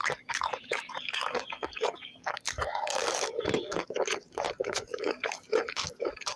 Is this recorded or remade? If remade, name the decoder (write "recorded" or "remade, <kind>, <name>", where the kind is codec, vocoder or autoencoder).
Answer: remade, codec, DAC